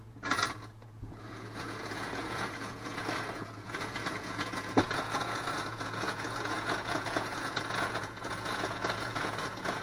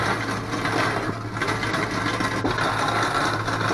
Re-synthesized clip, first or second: first